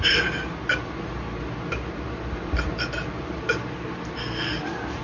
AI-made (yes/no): no